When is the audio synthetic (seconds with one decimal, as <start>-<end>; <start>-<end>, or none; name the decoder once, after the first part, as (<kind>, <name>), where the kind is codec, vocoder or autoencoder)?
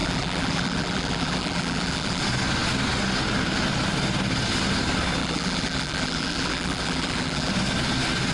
0.0-2.2 (vocoder, BigVGAN v2); 5.2-7.5